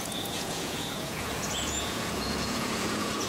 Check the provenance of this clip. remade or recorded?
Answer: remade